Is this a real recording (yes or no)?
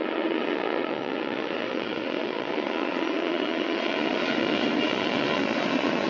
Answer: no